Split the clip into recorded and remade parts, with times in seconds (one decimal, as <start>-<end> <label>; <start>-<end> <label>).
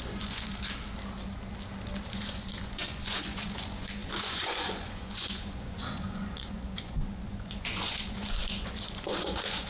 0.0-0.5 remade; 0.5-2.1 recorded; 2.1-9.7 remade